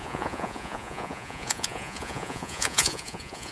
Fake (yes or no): yes